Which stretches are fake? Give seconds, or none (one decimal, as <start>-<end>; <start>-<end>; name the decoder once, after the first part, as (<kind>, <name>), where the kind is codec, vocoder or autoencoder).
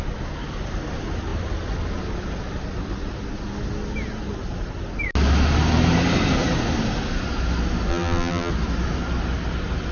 7.9-8.5 (vocoder, BigVGAN v2)